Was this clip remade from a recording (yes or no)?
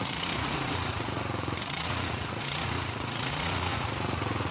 yes